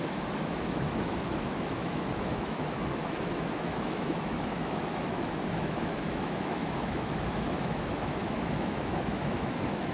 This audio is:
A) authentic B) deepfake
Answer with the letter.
B